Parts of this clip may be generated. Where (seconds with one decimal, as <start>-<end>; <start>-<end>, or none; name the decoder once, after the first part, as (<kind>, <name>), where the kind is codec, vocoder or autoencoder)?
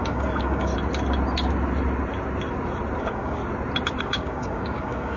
0.0-0.7 (codec, DAC); 3.0-3.4; 4.0-5.2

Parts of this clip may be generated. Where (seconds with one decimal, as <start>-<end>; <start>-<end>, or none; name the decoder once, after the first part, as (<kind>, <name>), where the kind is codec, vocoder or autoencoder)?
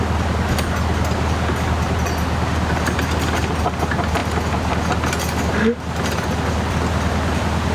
none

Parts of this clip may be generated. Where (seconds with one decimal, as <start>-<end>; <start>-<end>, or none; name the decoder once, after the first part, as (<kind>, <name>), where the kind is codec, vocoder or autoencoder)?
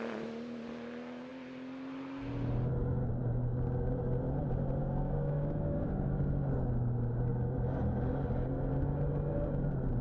4.8-6.1 (codec, DAC)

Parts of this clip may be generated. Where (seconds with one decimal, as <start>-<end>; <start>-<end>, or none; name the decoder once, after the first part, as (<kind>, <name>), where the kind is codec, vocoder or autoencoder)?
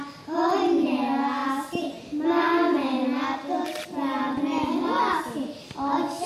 none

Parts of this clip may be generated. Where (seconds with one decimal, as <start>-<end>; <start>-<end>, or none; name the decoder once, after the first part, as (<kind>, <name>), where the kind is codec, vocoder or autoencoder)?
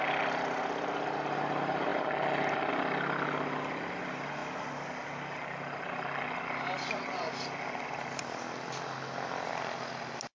none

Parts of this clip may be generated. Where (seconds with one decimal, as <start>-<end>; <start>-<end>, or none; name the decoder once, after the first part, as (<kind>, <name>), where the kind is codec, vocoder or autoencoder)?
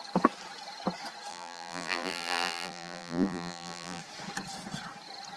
1.3-4.0 (vocoder, BigVGAN v2)